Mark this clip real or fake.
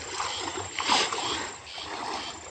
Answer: real